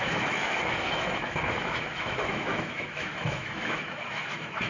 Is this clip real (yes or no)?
no